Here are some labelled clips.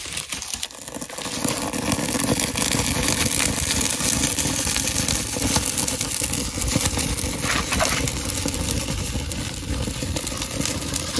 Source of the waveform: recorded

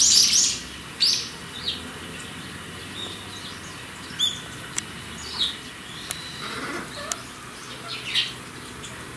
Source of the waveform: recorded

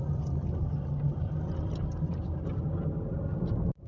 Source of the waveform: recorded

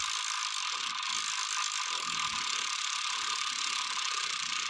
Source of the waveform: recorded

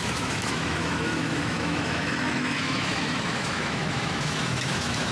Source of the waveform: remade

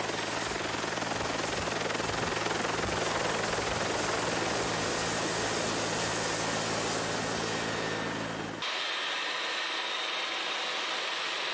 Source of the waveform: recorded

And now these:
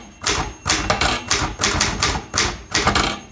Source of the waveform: recorded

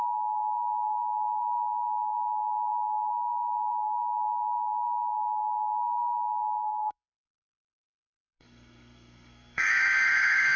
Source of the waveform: remade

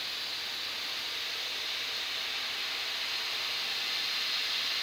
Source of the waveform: recorded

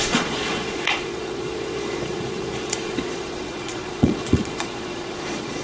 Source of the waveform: remade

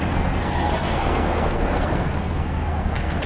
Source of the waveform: remade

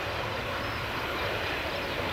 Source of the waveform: recorded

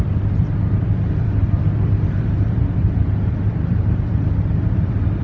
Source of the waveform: remade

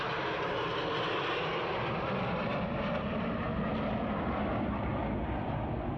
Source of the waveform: recorded